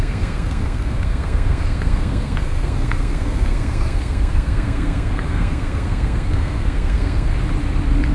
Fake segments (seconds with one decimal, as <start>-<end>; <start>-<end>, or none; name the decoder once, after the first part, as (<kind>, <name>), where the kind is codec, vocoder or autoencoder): 0.0-7.3 (codec, SNAC)